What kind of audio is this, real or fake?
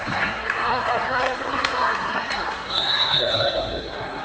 fake